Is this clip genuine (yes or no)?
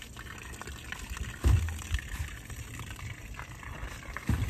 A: yes